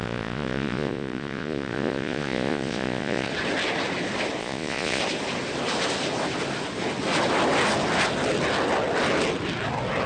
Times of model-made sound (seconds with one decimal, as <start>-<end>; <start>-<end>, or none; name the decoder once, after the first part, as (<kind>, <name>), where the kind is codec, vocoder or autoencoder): 0.0-3.3 (vocoder, Vocos); 4.4-5.0